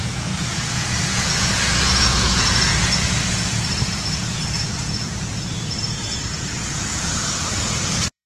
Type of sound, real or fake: fake